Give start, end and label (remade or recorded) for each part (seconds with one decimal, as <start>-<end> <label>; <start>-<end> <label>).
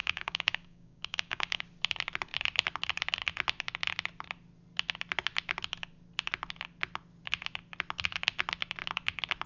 0.0-1.6 remade; 1.6-9.5 recorded